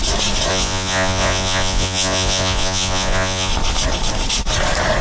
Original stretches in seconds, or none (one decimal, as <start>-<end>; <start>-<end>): 0.0-0.5; 3.5-5.0